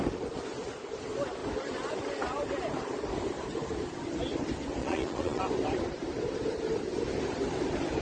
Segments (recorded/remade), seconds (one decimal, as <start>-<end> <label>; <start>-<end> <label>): 0.0-4.8 recorded; 4.8-5.4 remade; 5.4-8.0 recorded